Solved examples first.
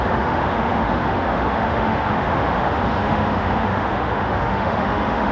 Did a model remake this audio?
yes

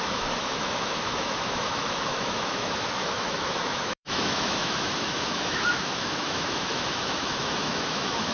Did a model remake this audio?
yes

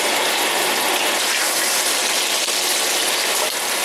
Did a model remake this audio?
no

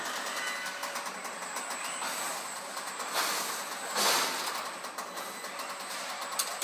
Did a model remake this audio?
no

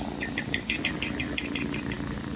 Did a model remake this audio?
no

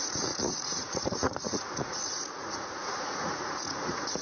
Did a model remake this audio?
yes